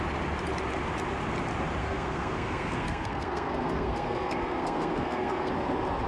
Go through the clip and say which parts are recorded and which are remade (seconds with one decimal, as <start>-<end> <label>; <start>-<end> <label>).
0.0-1.8 recorded; 1.8-5.5 remade; 5.5-6.1 recorded